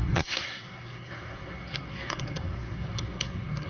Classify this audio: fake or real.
fake